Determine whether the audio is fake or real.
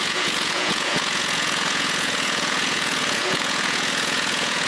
fake